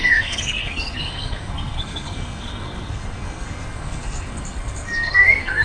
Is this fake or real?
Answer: fake